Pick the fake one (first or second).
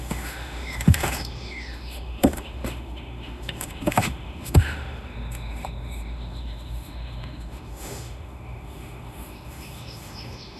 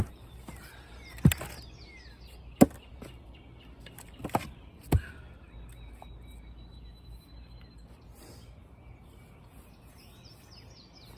first